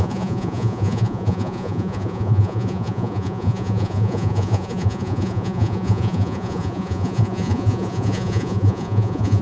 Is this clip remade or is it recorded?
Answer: remade